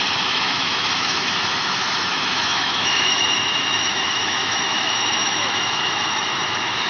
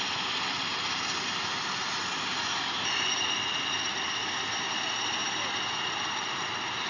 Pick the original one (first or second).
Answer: second